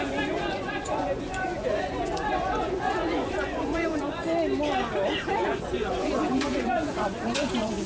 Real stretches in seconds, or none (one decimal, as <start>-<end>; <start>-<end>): 4.2-5.3